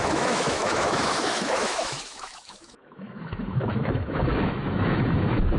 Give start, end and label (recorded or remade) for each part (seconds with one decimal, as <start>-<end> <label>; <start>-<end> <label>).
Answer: 0.0-5.6 remade